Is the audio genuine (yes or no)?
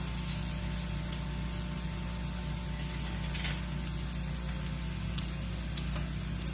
yes